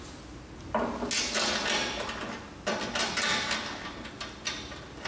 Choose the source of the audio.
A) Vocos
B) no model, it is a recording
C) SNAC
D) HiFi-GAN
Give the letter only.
B